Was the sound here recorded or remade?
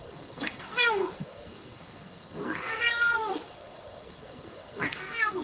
remade